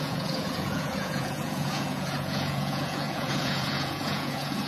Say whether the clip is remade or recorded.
remade